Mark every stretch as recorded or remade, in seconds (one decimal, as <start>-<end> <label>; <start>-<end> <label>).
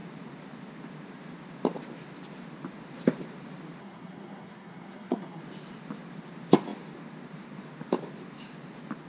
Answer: 0.0-3.8 recorded; 3.8-5.4 remade; 5.4-9.1 recorded